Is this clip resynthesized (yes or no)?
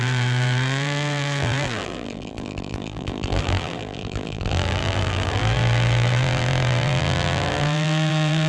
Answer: yes